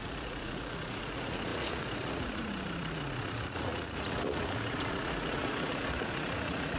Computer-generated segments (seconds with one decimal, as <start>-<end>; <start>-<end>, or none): 0.0-6.8